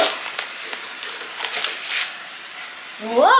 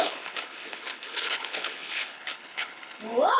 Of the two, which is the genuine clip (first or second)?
first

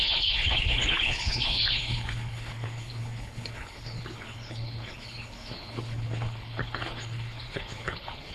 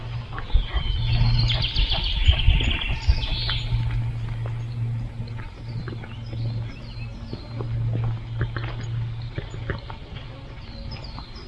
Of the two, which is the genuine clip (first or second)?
second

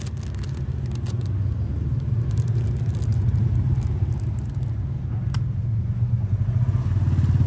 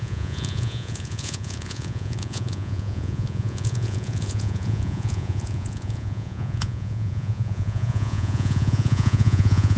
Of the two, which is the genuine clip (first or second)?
first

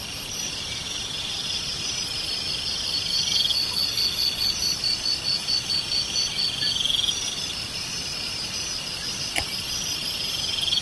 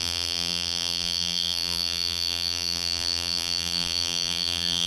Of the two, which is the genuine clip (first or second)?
first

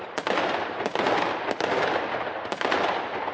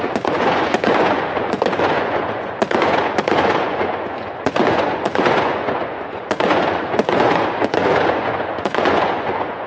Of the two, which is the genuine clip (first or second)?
first